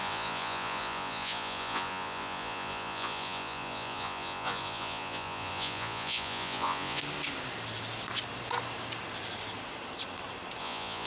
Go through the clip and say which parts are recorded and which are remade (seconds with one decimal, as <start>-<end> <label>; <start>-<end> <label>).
0.0-7.0 remade; 7.0-10.6 recorded; 10.6-11.1 remade